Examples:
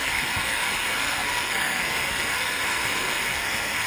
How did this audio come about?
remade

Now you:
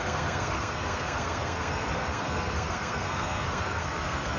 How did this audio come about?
remade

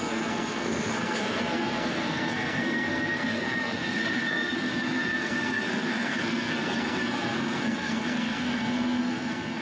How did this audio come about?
remade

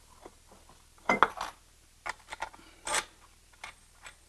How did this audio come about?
recorded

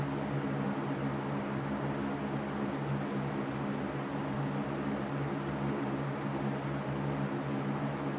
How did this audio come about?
recorded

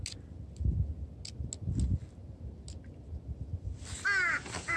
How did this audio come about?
recorded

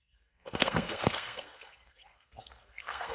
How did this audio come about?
remade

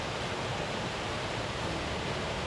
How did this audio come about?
recorded